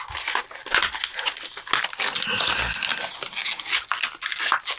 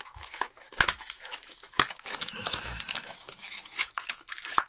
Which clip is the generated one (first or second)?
second